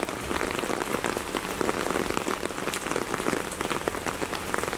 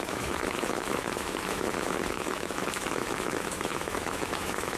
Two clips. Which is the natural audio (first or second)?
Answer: first